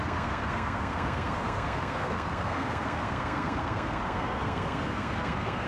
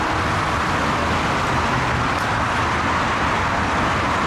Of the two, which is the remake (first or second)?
first